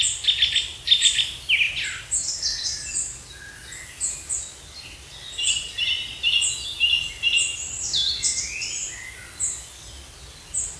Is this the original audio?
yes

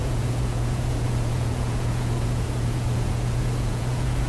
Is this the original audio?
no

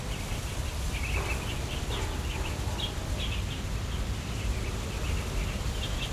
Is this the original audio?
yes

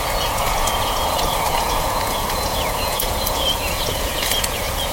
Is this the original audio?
no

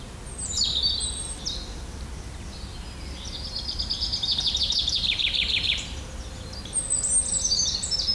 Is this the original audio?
yes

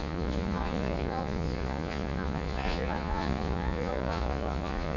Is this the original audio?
no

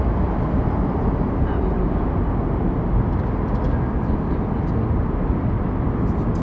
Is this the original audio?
yes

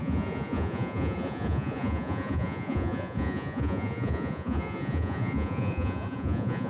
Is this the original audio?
no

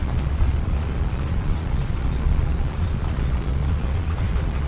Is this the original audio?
no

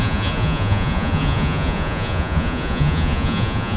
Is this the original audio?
no